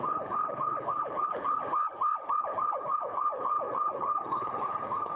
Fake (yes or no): yes